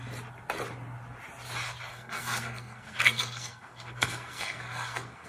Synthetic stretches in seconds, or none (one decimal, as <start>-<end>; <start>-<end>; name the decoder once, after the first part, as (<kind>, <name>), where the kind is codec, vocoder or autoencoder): 1.9-5.3 (codec, SNAC)